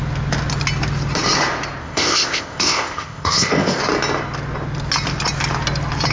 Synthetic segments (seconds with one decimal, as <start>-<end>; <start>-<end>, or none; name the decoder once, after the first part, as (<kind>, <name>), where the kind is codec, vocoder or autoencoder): 1.8-3.8 (codec, ZipCodec)